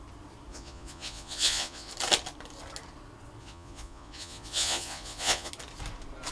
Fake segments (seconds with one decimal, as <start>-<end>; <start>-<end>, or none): 0.5-1.9; 3.4-5.5